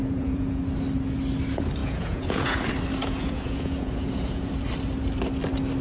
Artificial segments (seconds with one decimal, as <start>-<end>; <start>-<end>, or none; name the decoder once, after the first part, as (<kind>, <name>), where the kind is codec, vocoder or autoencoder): 0.0-0.6 (vocoder, Vocos); 1.8-2.6; 3.0-4.5